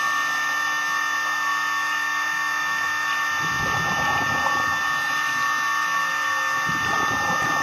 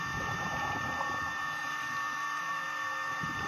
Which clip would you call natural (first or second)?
first